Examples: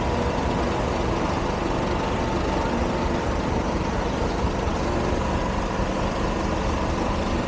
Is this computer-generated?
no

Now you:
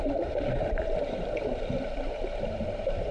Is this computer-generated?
yes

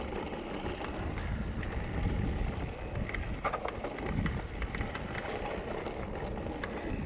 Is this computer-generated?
yes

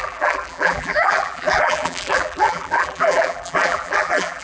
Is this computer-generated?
yes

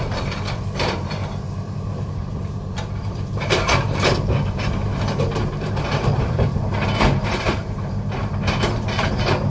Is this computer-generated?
yes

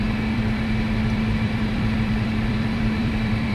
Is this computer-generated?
yes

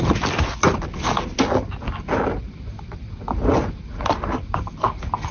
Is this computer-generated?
no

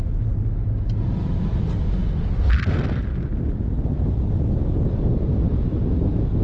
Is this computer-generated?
no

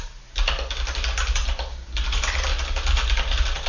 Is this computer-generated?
no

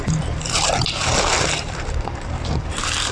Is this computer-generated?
yes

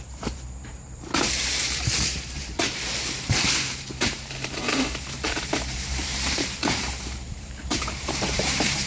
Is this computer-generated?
yes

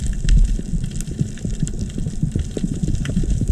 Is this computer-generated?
yes